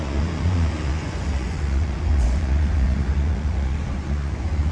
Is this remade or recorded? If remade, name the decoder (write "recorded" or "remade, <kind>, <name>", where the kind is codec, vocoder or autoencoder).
remade, vocoder, Vocos